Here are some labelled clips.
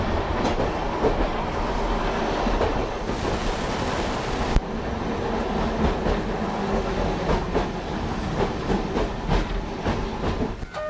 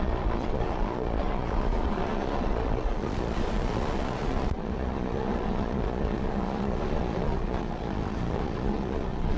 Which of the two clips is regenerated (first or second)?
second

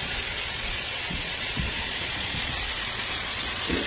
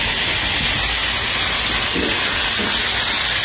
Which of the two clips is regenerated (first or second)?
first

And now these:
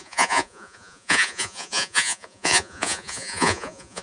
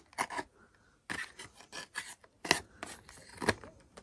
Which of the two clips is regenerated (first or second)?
first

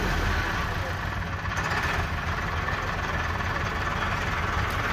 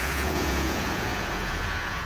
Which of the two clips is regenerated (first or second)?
second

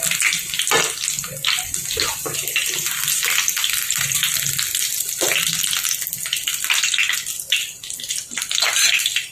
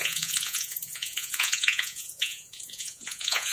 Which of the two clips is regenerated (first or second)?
second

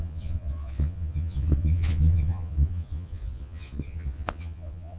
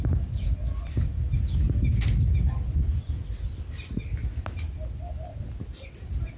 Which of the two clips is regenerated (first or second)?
first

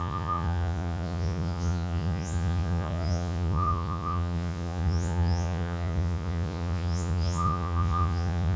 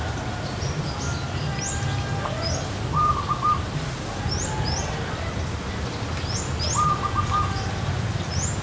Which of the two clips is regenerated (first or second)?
first